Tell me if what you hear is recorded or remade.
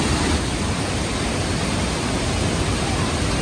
recorded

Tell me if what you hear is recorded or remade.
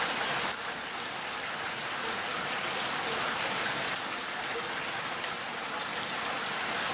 recorded